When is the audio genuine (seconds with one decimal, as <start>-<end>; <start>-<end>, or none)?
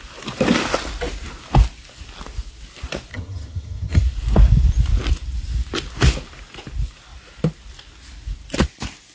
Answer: 0.0-3.1; 4.0-9.1